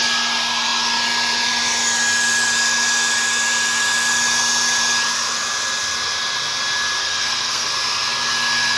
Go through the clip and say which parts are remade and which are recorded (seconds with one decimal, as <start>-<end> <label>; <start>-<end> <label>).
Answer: 0.0-7.0 recorded; 7.0-7.7 remade; 7.7-8.8 recorded